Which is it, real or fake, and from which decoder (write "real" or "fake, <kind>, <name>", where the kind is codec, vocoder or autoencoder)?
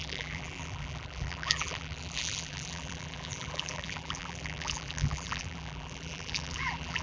fake, vocoder, BigVGAN v2